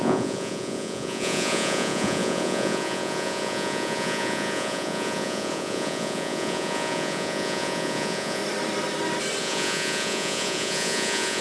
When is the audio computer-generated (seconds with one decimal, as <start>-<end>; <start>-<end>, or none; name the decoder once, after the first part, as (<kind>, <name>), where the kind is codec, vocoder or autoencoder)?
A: 0.0-8.4 (vocoder, Vocos); 9.4-11.4